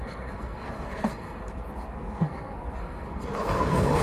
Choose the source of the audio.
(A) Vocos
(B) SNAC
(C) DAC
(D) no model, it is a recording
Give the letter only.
B